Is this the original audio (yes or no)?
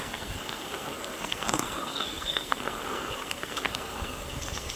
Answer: no